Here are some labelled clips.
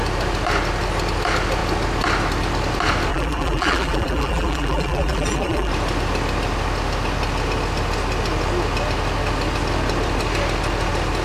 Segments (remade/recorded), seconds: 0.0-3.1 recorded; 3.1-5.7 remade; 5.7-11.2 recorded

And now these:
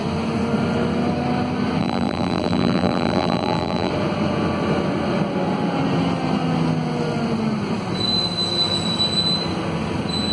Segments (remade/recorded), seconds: 0.0-1.8 recorded; 1.8-3.9 remade; 3.9-10.3 recorded